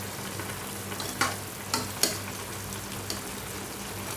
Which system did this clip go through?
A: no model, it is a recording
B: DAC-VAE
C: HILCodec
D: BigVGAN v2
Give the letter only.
A